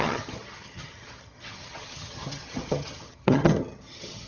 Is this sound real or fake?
fake